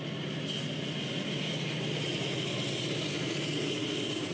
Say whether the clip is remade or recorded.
recorded